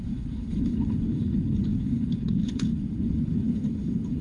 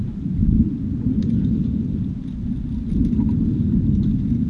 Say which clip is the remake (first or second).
first